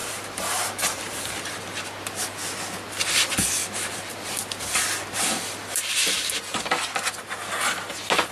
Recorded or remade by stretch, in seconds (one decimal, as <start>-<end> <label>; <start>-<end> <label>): 0.0-1.5 remade; 1.5-3.6 recorded; 3.6-4.1 remade; 4.1-8.3 recorded